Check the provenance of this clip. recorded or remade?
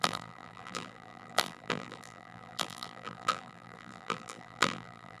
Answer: remade